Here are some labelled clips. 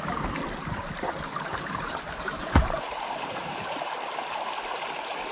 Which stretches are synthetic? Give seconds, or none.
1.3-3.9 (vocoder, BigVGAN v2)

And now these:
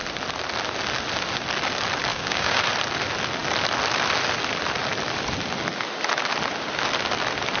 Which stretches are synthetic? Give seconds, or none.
2.1-2.6 (codec, DAC)

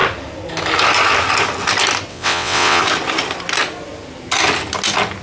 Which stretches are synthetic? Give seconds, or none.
2.1-2.8 (vocoder, WaveNeXt)

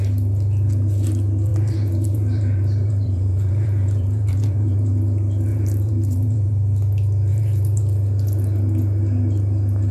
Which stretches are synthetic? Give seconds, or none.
1.5-4.9 (vocoder, BigVGAN v2); 5.5-6.5; 7.3-7.8

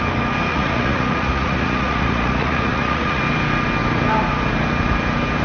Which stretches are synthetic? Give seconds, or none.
0.5-3.2 (vocoder, Vocos)

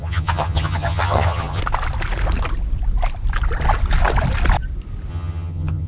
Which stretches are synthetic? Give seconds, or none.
0.0-1.6 (vocoder, HiFi-GAN); 5.1-5.9

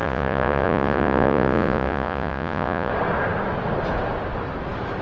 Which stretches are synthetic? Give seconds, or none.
0.0-2.9 (vocoder, Vocos)